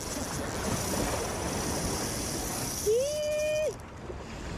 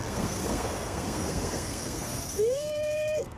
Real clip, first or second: first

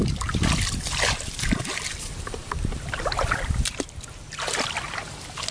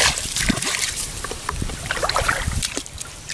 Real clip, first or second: first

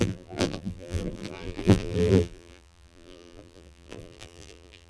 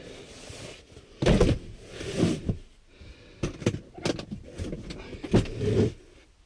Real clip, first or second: second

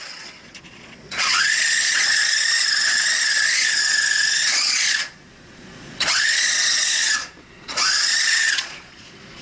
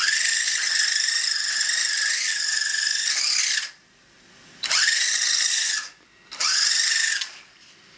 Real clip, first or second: second